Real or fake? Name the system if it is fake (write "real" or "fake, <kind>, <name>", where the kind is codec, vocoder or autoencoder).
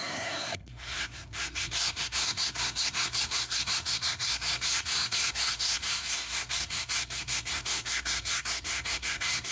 fake, codec, SNAC